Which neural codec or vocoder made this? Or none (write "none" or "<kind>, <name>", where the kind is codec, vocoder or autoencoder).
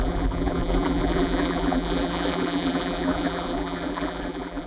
vocoder, BigVGAN v2